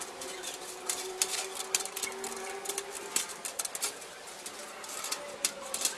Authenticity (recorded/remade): recorded